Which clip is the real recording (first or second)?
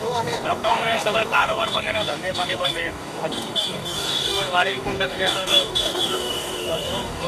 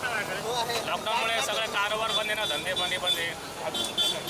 second